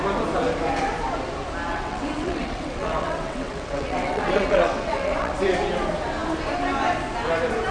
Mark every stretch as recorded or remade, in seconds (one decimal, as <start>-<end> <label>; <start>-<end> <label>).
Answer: 0.0-1.7 recorded; 1.7-5.3 remade; 5.3-7.7 recorded